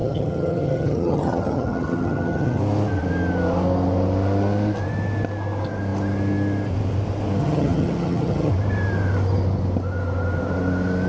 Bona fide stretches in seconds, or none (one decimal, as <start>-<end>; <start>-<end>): 2.6-7.4; 8.5-11.1